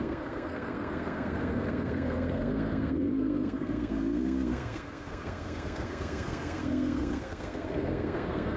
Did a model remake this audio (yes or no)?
yes